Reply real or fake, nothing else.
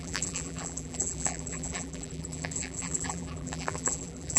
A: fake